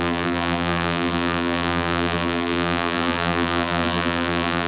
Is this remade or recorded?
remade